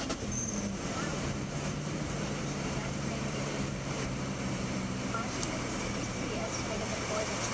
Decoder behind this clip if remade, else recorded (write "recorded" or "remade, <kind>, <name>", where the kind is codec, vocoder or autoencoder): remade, vocoder, BigVGAN v2